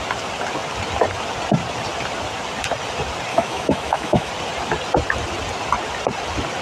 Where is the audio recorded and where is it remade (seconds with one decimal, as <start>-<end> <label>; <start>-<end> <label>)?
0.0-3.3 recorded; 3.3-4.3 remade; 4.3-6.6 recorded